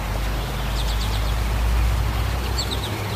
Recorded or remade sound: recorded